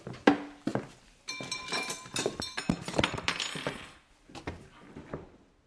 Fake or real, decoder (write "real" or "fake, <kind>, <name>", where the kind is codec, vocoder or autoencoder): real